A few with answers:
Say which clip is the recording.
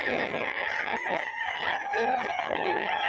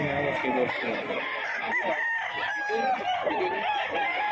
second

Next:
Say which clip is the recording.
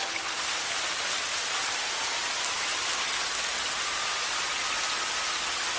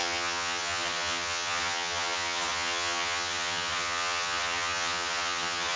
first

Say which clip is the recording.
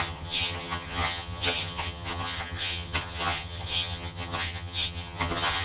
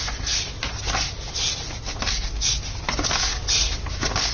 second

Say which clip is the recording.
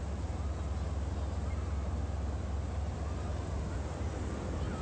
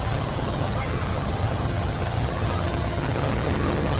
first